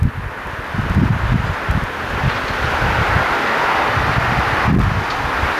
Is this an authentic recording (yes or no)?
yes